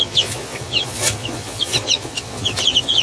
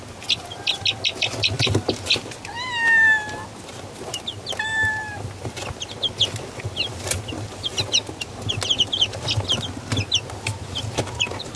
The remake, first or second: first